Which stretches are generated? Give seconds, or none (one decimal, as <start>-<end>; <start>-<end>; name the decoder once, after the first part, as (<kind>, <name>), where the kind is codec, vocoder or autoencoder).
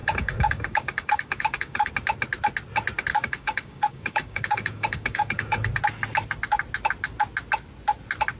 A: 0.0-1.9 (codec, DAC); 3.1-5.7